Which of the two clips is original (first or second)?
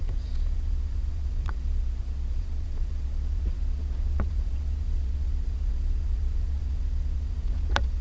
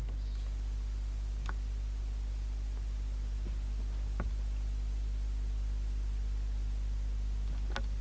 second